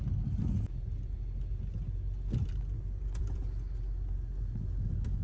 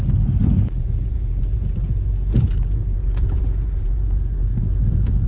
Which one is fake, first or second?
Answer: second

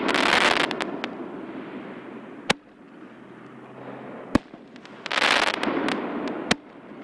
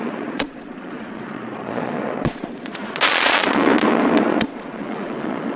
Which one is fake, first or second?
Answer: second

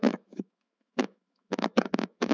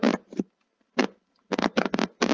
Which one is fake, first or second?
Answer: first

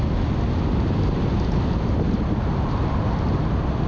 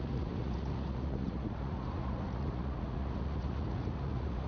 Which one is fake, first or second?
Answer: second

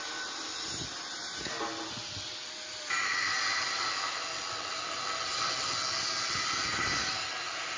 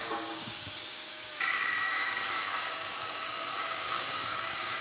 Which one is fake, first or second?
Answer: second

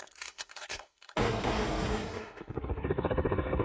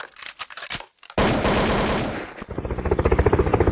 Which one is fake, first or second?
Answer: first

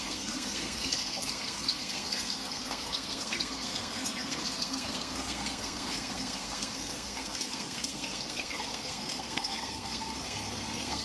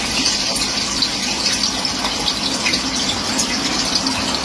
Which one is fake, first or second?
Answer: first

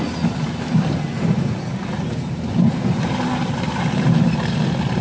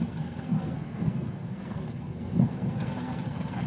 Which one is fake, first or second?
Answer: second